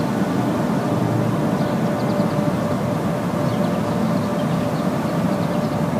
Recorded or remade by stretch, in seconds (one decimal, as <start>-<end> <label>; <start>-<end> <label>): 0.0-4.3 recorded; 4.3-6.0 remade